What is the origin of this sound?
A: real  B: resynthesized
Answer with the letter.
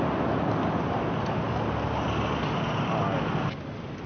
A